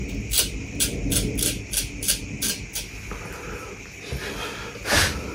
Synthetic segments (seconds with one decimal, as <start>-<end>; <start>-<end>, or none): none